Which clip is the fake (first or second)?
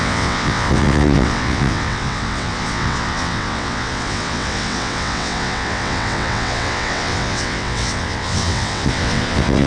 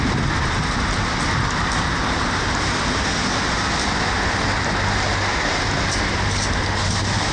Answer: first